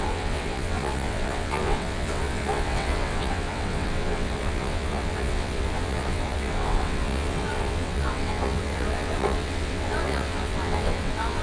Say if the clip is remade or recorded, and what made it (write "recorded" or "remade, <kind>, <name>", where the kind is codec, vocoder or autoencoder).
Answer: remade, vocoder, WaveNeXt